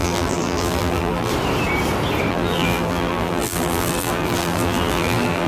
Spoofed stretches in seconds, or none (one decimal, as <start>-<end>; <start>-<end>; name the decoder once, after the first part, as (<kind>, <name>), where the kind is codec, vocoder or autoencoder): 0.0-1.3 (vocoder, BigVGAN v2); 2.3-5.5